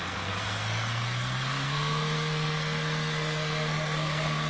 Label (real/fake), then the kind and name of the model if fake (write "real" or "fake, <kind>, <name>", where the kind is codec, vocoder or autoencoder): fake, codec, SNAC